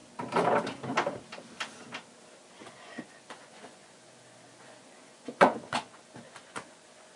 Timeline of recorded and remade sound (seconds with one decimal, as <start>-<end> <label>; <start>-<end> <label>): 0.0-2.6 recorded; 2.6-7.2 remade